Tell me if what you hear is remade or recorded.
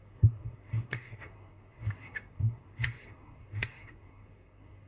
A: remade